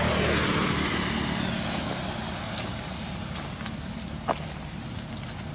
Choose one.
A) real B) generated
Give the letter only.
A